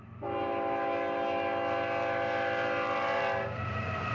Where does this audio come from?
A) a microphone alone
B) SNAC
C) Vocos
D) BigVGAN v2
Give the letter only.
A